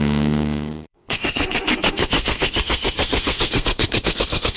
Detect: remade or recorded remade